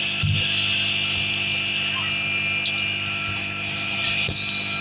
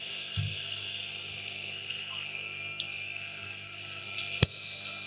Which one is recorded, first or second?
first